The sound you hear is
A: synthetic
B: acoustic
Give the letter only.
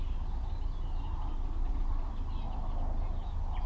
B